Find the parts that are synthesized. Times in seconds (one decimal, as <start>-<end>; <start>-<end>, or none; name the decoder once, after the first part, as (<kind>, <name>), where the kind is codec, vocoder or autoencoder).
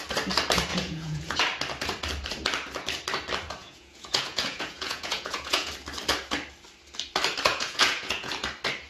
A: 0.7-1.4 (vocoder, Vocos); 3.6-5.7; 7.5-8.3